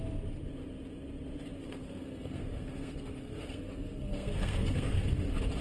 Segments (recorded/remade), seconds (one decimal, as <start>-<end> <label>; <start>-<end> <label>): 0.0-1.6 recorded; 1.6-5.0 remade; 5.0-5.6 recorded

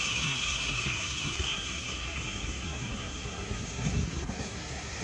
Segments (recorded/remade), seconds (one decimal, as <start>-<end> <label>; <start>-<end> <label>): 0.0-5.0 remade

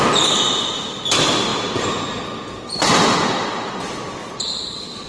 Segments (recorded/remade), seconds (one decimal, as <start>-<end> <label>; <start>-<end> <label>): 0.0-4.2 recorded; 4.2-5.1 remade

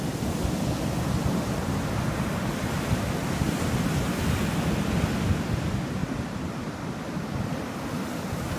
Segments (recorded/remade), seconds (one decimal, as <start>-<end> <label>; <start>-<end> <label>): 0.0-8.6 recorded